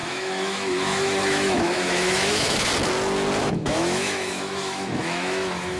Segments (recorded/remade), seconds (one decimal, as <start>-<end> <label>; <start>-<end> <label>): 0.0-2.7 remade; 2.7-3.4 recorded; 3.4-5.8 remade

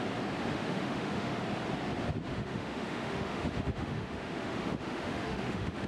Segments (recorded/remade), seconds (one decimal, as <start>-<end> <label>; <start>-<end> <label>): 0.0-0.5 recorded; 0.5-1.4 remade; 1.4-2.3 recorded; 2.3-5.9 remade

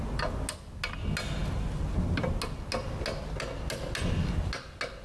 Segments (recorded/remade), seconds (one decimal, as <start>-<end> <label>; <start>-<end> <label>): 0.0-5.0 recorded

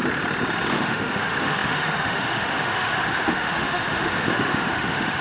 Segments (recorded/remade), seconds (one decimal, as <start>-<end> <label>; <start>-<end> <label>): 0.0-0.7 recorded; 0.7-5.2 remade